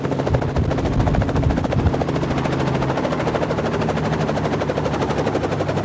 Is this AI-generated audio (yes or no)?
no